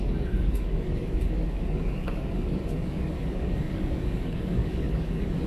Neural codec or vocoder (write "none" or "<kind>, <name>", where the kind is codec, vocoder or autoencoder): codec, DAC